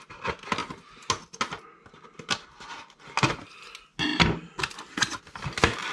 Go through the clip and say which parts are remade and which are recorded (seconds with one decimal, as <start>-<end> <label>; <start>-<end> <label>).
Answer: 0.0-5.9 recorded